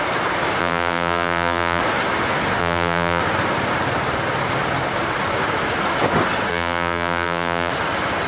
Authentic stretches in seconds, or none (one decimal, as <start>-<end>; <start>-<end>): 0.0-0.6; 1.8-2.6; 3.2-6.5; 7.7-8.3

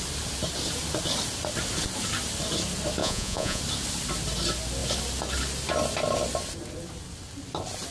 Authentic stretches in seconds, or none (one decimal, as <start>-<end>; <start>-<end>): 0.0-3.0; 3.6-7.9

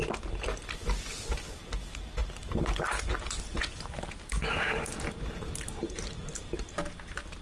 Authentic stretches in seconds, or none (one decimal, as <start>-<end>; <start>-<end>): 0.0-7.4

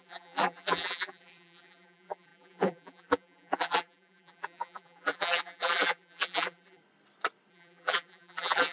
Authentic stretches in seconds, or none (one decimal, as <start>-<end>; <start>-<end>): 6.8-7.5